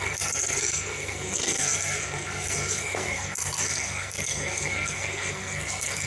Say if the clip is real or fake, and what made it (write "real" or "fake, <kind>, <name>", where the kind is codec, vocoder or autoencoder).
fake, codec, SNAC